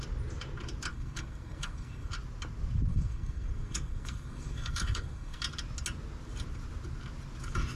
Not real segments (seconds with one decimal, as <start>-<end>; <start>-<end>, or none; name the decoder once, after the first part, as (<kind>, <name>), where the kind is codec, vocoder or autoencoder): 0.9-2.1 (codec, SNAC); 2.9-5.4